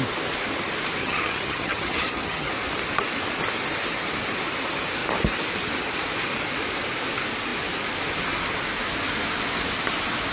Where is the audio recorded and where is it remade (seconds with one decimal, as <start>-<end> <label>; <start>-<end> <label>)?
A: 0.0-1.0 recorded; 1.0-2.5 remade; 2.5-10.3 recorded